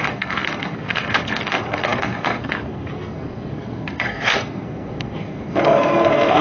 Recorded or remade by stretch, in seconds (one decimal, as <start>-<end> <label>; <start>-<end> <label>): 0.0-6.4 remade